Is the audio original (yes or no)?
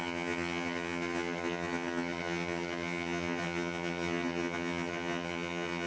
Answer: no